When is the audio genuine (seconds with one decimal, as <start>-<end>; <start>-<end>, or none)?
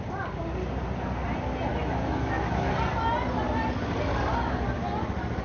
0.0-1.7; 2.7-5.4